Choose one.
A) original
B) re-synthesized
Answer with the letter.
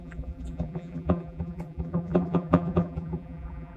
B